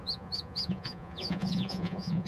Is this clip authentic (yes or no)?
no